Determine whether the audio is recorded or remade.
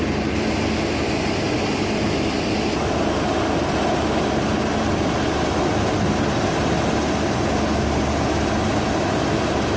recorded